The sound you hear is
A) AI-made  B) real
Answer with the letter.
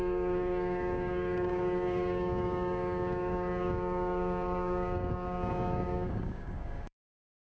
A